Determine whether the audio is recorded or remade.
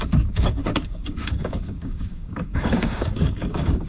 remade